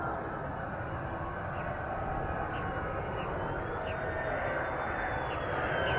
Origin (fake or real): real